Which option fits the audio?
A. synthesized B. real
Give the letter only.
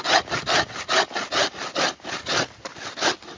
B